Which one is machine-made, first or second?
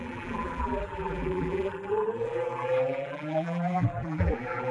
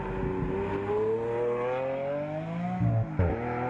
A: first